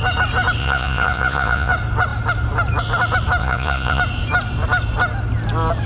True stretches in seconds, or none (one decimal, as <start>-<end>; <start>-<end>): 0.0-0.6; 1.7-3.4; 4.0-5.9